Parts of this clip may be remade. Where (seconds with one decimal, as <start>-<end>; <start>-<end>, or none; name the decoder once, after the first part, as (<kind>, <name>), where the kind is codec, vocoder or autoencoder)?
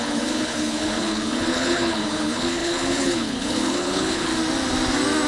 0.0-4.3 (codec, HILCodec)